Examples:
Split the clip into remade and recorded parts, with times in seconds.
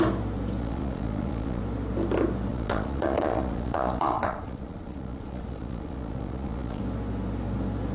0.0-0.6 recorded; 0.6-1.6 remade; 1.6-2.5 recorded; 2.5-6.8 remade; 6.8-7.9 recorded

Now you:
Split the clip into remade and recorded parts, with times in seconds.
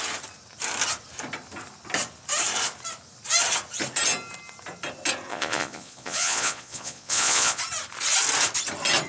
0.0-5.3 recorded; 5.3-7.6 remade; 7.6-9.1 recorded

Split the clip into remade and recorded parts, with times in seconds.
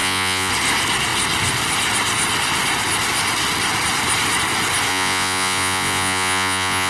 0.0-0.5 remade; 0.5-4.9 recorded; 4.9-6.9 remade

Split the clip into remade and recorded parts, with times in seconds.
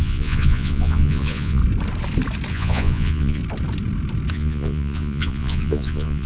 0.0-1.6 remade; 1.6-2.5 recorded; 2.5-3.4 remade; 3.4-4.3 recorded; 4.3-6.3 remade